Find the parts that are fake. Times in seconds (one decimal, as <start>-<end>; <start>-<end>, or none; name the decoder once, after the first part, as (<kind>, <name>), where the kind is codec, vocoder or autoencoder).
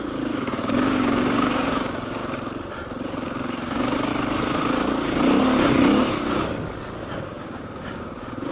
0.0-2.2 (codec, DAC); 3.1-4.1; 7.2-8.5